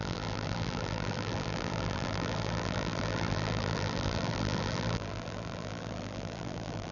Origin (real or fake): fake